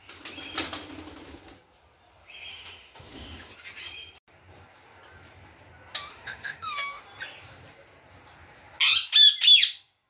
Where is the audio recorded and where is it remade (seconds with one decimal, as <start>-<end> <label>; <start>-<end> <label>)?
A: 0.0-2.5 recorded; 2.5-3.5 remade; 3.5-6.1 recorded; 6.1-7.0 remade; 7.0-10.1 recorded

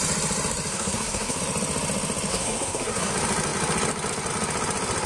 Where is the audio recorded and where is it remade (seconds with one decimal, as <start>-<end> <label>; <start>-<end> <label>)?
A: 0.0-0.7 recorded; 0.7-1.4 remade; 1.4-2.3 recorded; 2.3-3.1 remade; 3.1-5.1 recorded

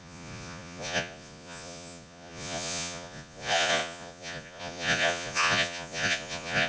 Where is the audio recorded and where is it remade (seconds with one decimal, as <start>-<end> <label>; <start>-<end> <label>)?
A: 0.0-6.7 remade

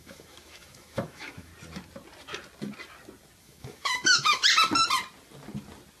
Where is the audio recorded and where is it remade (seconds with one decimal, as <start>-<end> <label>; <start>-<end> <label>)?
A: 0.0-1.5 remade; 1.5-3.4 recorded; 3.4-4.4 remade; 4.4-6.0 recorded

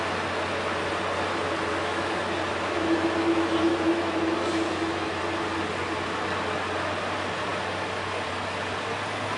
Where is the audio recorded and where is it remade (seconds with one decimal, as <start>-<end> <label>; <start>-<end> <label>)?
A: 0.0-1.7 recorded; 1.7-2.2 remade; 2.2-3.7 recorded; 3.7-5.2 remade; 5.2-9.4 recorded

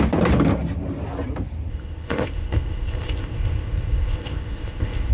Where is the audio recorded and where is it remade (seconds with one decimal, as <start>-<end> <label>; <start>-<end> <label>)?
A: 0.0-1.7 recorded; 1.7-5.1 remade